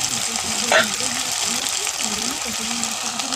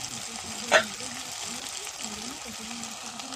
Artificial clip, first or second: first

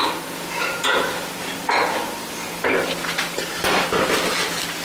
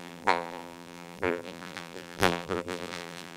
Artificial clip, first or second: second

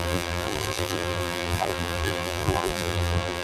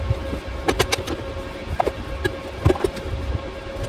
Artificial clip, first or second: first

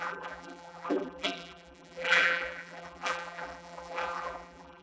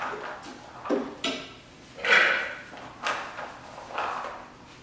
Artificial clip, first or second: first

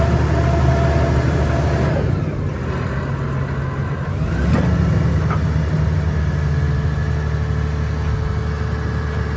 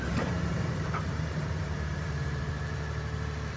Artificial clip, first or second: second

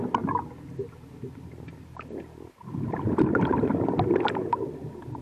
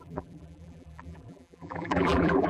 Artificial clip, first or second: second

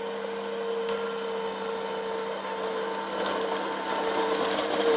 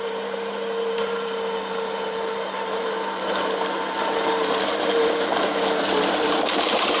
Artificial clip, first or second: second